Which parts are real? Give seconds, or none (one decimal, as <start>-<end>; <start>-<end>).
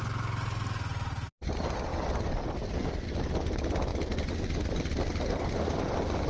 0.0-6.3